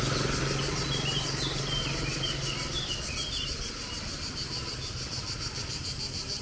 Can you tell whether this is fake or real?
real